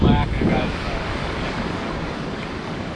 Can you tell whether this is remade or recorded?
remade